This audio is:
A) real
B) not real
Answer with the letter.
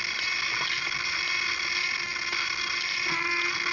A